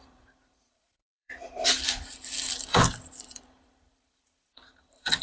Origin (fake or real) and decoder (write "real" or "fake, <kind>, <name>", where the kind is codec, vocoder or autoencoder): fake, vocoder, BigVGAN v2